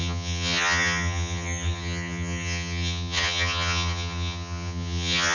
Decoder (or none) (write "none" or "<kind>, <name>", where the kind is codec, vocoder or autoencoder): vocoder, HiFi-GAN